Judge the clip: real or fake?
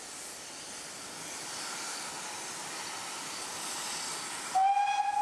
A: real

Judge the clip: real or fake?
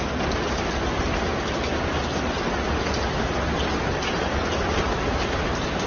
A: real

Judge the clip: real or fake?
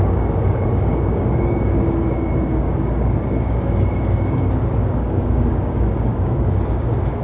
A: fake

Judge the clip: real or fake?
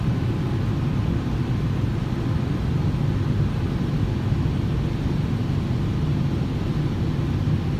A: real